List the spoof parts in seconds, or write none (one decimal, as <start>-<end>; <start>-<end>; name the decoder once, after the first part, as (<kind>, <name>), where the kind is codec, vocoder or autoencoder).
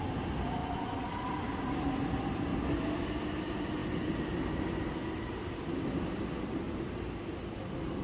0.0-0.6 (vocoder, BigVGAN v2); 1.1-2.5; 3.0-3.8; 4.4-8.0